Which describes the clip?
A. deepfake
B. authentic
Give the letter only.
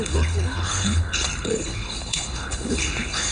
A